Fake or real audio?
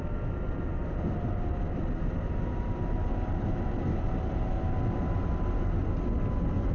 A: real